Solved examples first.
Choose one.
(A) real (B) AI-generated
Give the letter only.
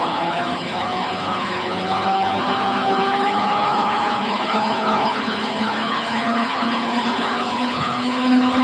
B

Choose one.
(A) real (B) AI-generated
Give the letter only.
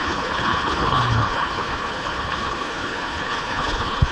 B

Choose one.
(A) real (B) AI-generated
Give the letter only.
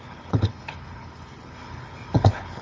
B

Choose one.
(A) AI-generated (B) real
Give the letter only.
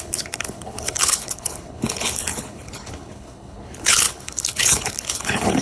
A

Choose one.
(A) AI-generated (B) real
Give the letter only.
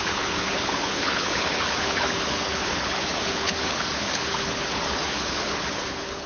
A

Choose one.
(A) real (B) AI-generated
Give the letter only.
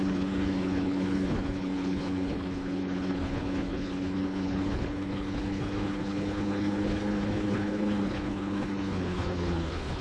B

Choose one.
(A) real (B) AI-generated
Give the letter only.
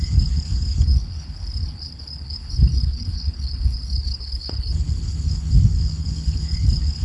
B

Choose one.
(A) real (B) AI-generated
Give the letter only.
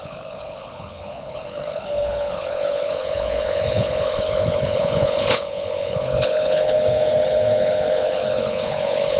B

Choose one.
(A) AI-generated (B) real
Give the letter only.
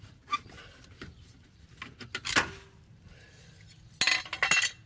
B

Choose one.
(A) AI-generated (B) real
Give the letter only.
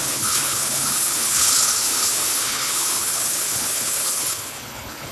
A